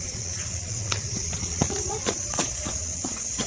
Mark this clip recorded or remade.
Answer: remade